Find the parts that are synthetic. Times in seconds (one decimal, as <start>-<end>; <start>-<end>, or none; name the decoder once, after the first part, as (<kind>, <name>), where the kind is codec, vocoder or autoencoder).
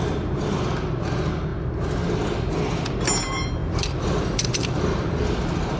3.6-5.2 (vocoder, BigVGAN v2)